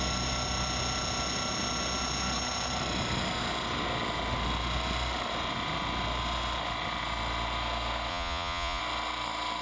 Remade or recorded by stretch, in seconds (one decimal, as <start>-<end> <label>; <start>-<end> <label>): 0.0-8.1 recorded; 8.1-8.8 remade; 8.8-9.6 recorded